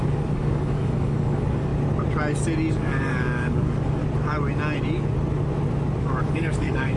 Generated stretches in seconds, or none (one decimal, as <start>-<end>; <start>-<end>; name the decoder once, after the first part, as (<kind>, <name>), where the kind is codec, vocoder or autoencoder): 0.0-1.7 (codec, DAC); 2.7-4.0; 6.0-7.0